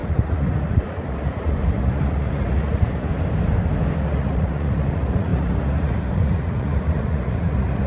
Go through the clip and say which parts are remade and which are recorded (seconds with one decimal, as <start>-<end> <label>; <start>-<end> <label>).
0.0-3.1 remade; 3.1-4.0 recorded; 4.0-7.9 remade